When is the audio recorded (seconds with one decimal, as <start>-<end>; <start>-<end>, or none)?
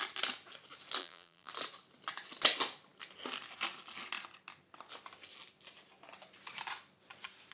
0.0-1.0; 1.5-7.5